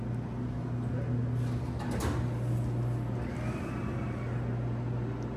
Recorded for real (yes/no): yes